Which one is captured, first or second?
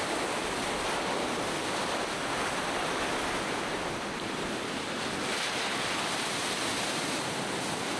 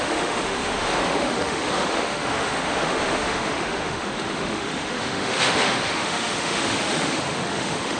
first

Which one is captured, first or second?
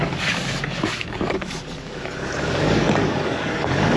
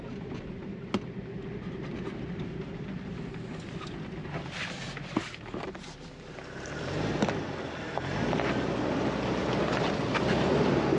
second